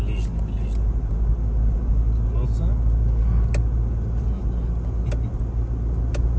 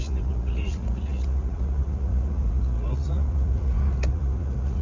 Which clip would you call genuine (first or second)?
first